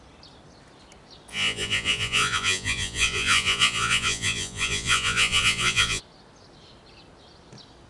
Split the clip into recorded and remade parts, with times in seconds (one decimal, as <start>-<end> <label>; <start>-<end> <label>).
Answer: 0.0-1.3 recorded; 1.3-6.0 remade; 6.0-7.9 recorded